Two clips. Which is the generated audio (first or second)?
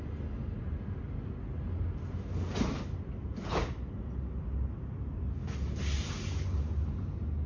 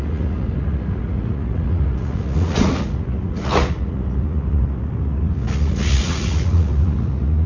second